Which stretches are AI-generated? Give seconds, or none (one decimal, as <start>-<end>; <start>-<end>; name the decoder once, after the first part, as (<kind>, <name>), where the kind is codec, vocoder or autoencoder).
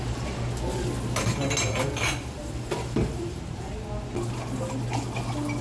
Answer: 2.4-3.7 (vocoder, BigVGAN v2)